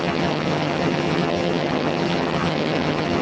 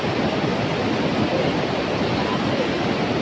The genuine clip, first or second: second